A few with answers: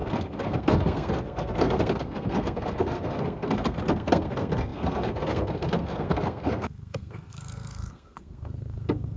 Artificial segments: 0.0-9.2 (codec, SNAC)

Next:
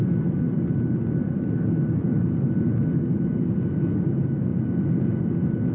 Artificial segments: none

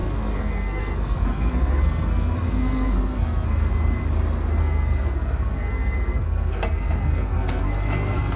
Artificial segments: 0.0-3.7 (codec, SNAC); 4.6-8.4

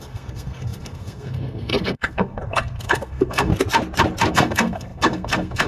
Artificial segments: 0.0-3.5 (codec, SNAC); 4.3-5.7